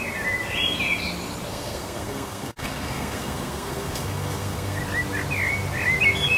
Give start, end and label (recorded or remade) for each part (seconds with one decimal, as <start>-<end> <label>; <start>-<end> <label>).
0.0-1.5 recorded; 1.5-4.8 remade; 4.8-6.4 recorded